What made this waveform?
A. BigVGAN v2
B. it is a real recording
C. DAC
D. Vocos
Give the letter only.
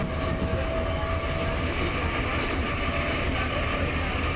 B